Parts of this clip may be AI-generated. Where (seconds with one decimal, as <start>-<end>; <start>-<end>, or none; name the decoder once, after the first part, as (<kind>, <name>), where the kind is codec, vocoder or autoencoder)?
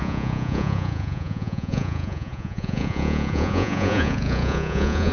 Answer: 0.0-5.1 (vocoder, Vocos)